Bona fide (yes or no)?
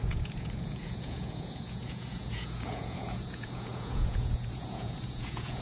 no